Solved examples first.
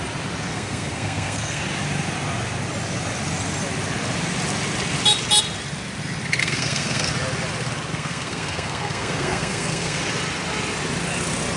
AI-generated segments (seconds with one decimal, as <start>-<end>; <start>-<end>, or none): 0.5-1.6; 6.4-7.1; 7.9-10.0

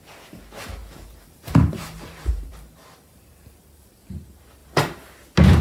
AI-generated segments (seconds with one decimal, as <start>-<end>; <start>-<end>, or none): 0.8-4.0

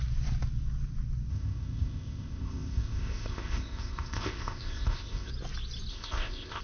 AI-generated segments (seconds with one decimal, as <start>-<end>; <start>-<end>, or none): 1.3-5.3; 5.9-6.6

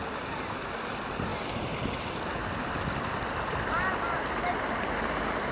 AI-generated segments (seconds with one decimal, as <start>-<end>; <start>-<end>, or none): none